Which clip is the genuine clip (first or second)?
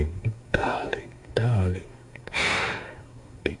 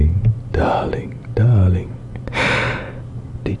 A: second